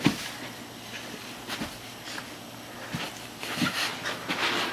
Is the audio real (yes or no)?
yes